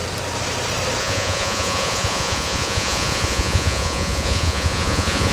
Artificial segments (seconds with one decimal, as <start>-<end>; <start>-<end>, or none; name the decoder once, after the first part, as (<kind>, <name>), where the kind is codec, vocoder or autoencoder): 1.0-5.3 (vocoder, Vocos)